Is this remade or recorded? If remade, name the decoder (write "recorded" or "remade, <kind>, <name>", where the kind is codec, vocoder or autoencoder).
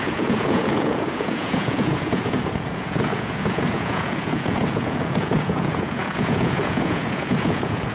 remade, vocoder, Vocos